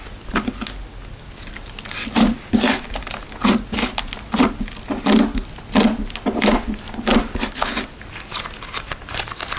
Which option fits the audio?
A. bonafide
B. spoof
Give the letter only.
A